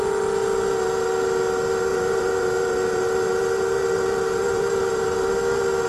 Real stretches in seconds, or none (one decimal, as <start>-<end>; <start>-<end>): 0.0-1.9; 5.4-5.9